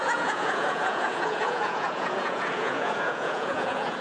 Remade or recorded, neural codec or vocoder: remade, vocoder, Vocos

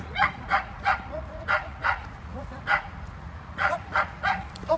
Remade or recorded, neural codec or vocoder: remade, vocoder, Vocos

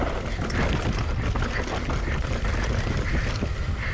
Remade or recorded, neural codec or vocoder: recorded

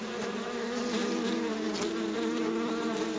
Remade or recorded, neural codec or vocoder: recorded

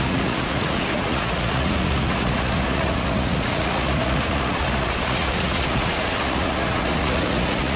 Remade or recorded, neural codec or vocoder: remade, vocoder, Vocos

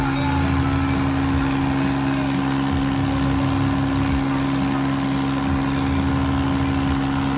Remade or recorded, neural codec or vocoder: recorded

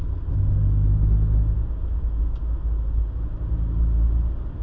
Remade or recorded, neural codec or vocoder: recorded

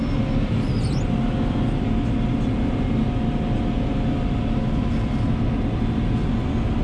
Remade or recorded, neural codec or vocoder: recorded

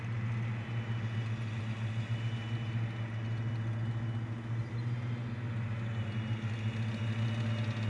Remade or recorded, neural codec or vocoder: recorded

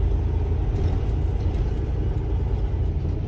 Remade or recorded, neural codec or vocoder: recorded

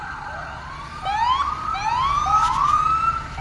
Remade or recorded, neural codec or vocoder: recorded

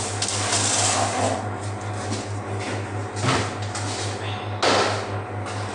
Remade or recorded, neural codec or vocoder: recorded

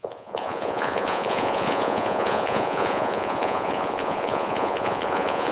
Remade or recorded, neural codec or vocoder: remade, vocoder, Vocos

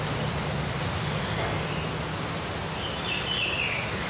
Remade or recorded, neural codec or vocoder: recorded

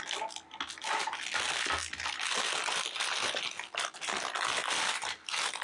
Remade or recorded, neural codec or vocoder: recorded